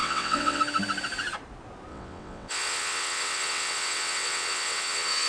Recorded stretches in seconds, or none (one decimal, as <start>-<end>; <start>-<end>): 0.6-1.9